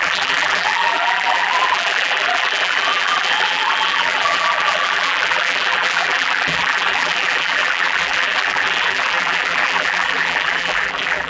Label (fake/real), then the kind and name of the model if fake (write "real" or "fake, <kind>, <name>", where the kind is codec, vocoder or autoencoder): fake, vocoder, BigVGAN v2